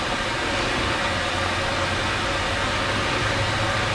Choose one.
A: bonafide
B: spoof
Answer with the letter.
A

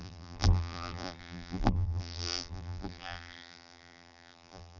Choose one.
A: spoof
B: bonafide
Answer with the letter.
A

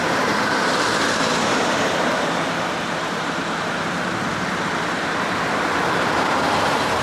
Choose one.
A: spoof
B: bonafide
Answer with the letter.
A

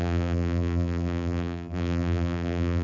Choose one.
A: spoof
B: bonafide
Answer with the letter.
A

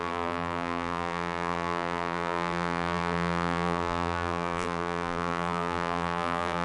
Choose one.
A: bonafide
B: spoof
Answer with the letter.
B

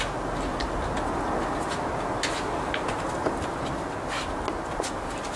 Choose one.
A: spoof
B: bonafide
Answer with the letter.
B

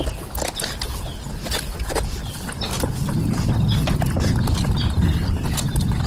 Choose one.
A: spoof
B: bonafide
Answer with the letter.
B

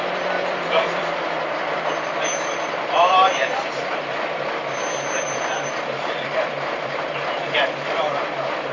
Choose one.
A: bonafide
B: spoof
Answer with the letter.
B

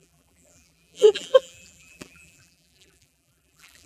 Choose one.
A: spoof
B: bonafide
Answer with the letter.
A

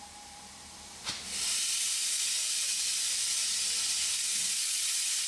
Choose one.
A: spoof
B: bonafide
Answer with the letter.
B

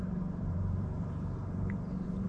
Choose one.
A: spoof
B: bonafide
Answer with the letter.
A